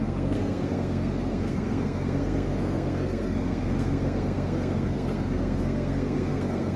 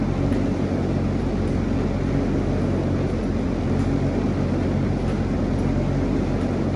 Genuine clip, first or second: second